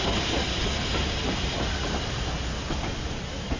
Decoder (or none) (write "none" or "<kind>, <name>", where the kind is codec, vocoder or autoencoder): none